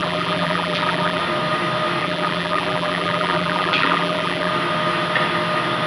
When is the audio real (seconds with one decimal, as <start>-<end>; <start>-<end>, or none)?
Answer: 1.2-2.0; 4.5-5.9